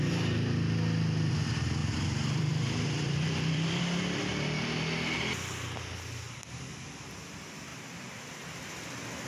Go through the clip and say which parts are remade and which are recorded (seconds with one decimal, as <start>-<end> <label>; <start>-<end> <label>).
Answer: 0.0-1.8 recorded; 1.8-3.8 remade; 3.8-7.7 recorded; 7.7-8.2 remade; 8.2-9.3 recorded